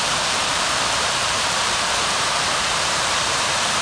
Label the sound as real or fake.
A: fake